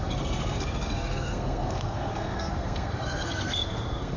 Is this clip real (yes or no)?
no